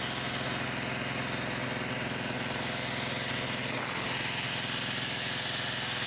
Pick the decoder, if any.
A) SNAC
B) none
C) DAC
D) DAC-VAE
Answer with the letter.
B